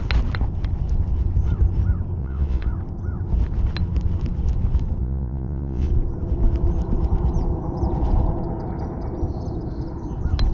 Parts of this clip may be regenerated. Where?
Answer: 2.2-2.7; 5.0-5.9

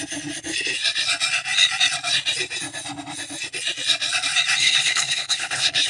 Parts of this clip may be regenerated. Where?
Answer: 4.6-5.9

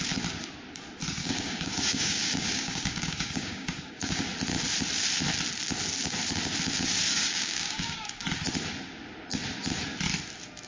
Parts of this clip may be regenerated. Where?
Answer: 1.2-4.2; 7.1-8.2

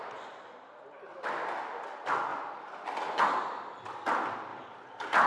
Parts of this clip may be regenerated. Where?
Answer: 2.3-3.2; 4.5-5.3

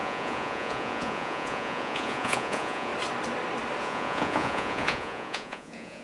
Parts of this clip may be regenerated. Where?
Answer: 0.0-2.9; 3.8-6.0